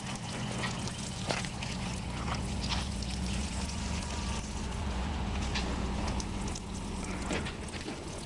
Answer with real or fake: fake